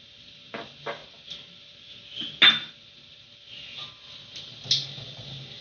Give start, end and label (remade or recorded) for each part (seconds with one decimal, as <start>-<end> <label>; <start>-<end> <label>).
0.0-5.6 recorded